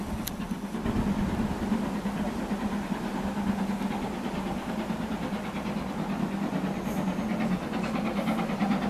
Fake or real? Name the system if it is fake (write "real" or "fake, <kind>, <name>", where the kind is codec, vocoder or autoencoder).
real